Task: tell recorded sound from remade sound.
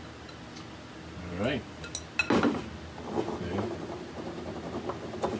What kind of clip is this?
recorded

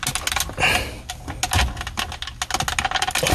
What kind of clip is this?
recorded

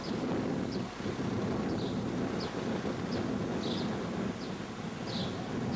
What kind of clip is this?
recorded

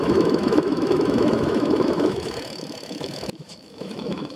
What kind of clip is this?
remade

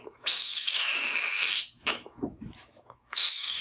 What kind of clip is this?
remade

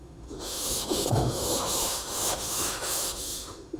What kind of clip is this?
remade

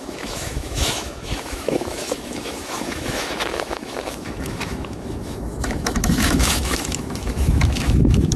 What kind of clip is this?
remade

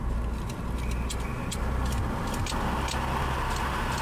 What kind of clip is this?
recorded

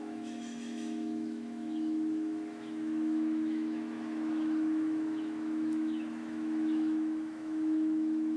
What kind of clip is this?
remade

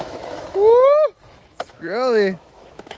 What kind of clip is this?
remade